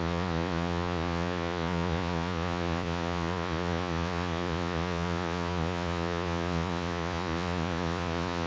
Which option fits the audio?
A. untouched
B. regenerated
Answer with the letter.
B